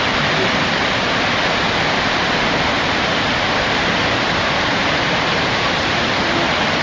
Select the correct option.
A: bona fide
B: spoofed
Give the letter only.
A